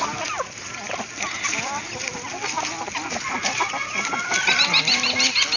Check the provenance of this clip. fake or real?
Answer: real